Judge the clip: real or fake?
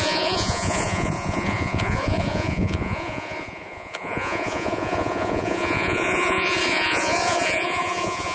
fake